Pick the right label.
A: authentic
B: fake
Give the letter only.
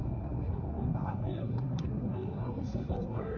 B